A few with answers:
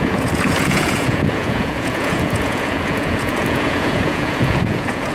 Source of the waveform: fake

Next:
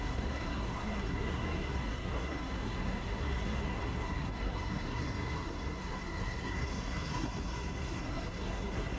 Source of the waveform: fake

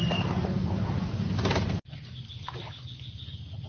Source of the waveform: real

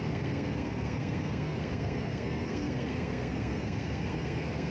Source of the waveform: fake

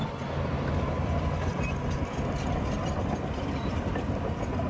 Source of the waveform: real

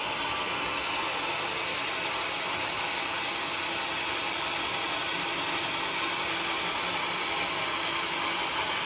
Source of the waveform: real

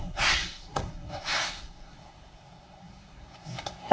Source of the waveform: fake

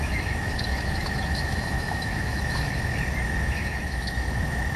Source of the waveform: fake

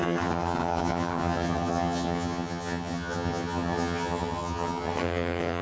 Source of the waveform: fake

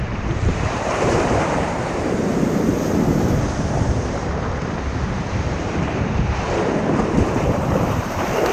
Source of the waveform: fake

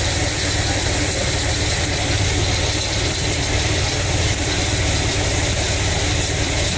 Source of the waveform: fake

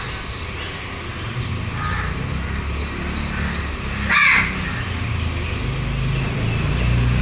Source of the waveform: real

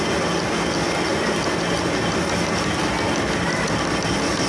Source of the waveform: real